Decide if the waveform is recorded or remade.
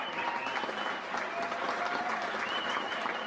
recorded